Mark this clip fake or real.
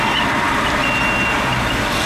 real